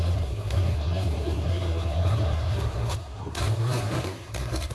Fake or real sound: fake